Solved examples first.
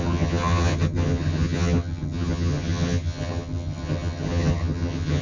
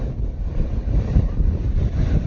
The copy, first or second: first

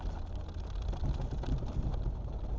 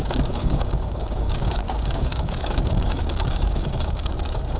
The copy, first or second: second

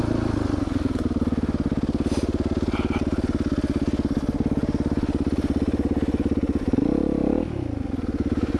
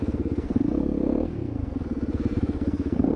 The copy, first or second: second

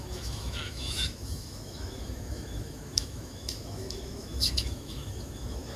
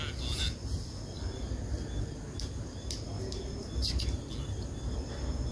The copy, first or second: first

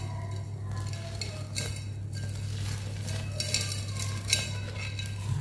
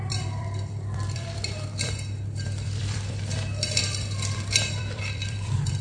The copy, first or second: second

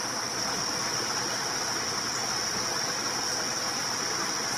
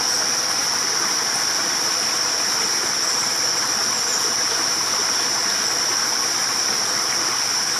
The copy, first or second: first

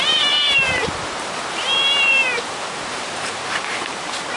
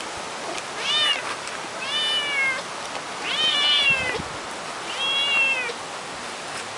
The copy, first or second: first